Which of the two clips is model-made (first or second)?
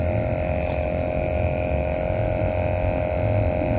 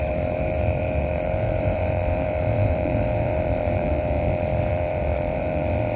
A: second